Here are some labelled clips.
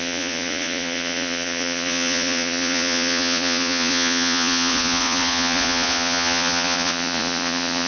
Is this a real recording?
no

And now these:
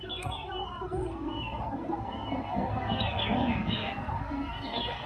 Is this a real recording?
no